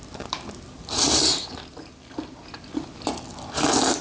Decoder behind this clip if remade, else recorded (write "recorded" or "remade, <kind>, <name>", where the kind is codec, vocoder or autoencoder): recorded